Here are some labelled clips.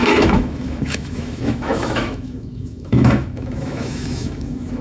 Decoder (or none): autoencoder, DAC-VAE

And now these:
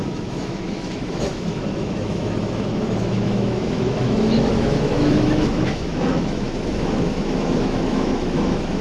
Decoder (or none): autoencoder, DAC-VAE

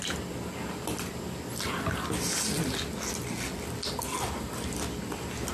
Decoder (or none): none